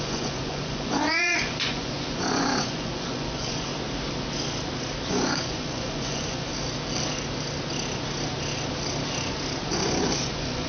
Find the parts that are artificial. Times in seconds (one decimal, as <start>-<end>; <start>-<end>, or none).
0.0-3.7; 5.1-6.5; 9.6-10.7